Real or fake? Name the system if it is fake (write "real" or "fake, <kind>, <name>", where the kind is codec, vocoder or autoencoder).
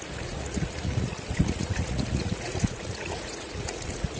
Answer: fake, vocoder, Vocos